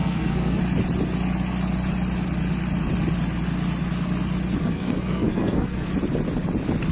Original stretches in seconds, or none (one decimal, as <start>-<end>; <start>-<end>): 0.6-4.6; 5.9-6.9